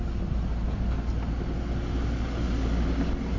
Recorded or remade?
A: recorded